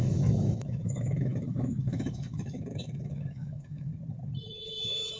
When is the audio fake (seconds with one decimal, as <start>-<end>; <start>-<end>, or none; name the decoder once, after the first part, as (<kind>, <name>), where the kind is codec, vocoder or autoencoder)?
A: 0.0-3.9 (autoencoder, DAC-VAE); 4.5-5.2